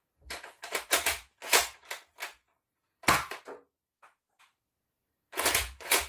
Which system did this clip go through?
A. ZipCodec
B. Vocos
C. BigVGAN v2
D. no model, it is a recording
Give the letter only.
B